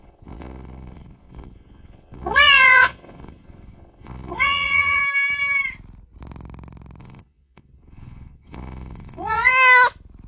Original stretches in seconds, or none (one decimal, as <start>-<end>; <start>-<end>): 5.0-7.0; 9.5-10.3